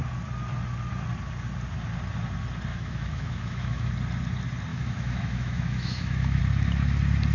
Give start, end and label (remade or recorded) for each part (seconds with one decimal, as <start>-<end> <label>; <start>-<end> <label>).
0.0-2.7 recorded; 2.7-3.9 remade; 3.9-4.7 recorded; 4.7-6.4 remade; 6.4-7.3 recorded